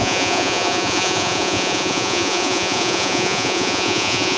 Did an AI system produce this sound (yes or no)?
yes